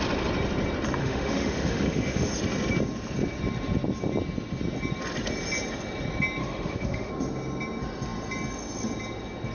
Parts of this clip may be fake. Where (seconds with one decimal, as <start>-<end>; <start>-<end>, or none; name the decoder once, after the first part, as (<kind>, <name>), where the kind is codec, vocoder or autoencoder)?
1.0-2.3 (autoencoder, DAC-VAE); 6.4-7.1